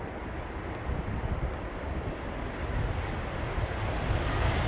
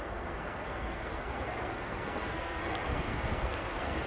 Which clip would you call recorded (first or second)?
first